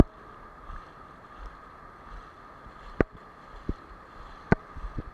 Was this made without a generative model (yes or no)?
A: yes